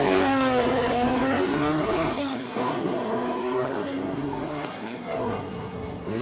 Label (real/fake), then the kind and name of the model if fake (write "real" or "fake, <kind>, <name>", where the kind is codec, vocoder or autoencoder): fake, codec, SNAC